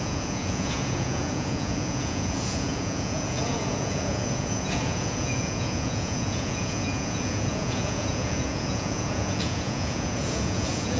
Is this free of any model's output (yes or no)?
no